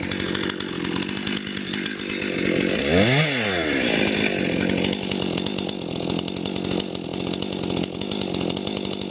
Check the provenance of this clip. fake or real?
real